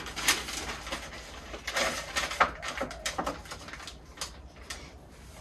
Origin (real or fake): real